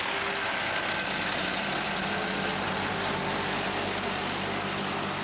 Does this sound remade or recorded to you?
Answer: recorded